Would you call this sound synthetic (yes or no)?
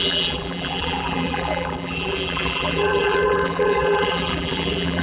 yes